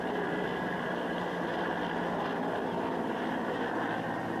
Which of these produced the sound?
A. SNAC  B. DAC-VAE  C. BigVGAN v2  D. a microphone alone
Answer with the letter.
D